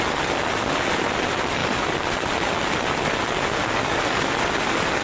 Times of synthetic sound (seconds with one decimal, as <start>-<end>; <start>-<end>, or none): none

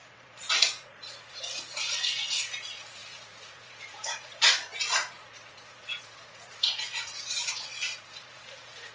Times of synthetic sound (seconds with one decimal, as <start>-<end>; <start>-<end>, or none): 0.0-8.9

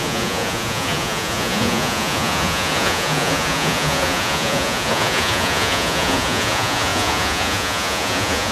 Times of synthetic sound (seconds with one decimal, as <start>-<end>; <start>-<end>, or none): 0.0-8.5

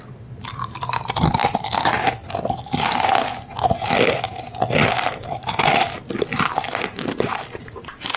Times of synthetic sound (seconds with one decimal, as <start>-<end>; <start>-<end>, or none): none

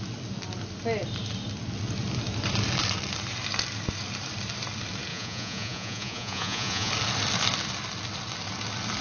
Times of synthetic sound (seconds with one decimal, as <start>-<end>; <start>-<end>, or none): 5.1-6.9

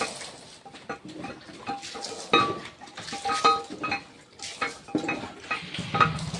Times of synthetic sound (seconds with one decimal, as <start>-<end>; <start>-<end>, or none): none

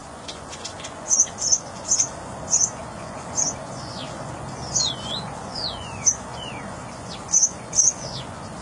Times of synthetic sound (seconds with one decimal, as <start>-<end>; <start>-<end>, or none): 0.0-8.6

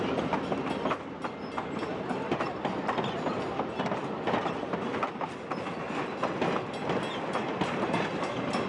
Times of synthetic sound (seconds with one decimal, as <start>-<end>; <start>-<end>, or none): none